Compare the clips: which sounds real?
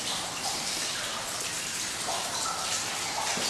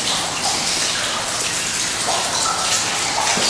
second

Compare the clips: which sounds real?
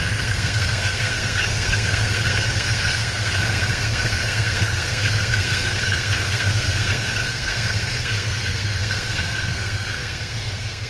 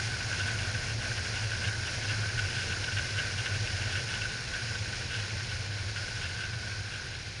second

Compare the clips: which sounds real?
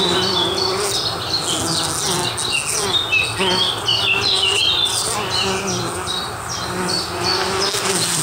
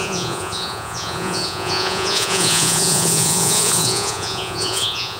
first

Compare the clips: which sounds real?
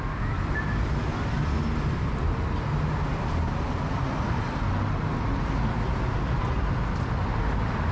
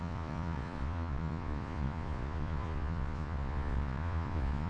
first